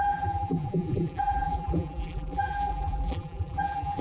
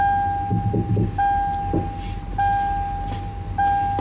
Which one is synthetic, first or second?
first